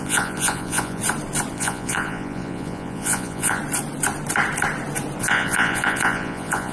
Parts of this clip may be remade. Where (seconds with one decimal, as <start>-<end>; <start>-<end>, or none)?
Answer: 0.0-1.0; 1.5-3.6; 5.2-6.7